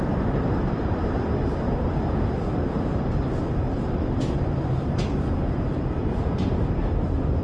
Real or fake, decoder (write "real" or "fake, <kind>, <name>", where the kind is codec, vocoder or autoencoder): fake, vocoder, BigVGAN v2